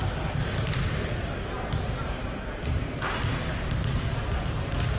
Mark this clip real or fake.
real